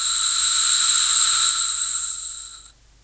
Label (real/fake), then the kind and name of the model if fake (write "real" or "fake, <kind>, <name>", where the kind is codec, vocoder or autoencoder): real